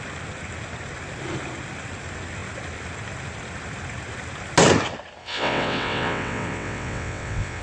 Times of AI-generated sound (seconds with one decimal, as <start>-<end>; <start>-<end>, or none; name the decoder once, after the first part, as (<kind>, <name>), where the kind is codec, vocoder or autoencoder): 5.2-7.6 (vocoder, WaveNeXt)